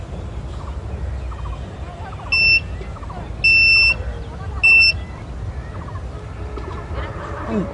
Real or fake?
real